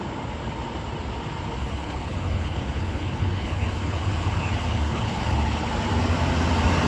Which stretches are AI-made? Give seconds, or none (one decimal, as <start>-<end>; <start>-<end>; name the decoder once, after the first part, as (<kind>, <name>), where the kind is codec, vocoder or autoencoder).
1.6-5.7 (codec, HILCodec)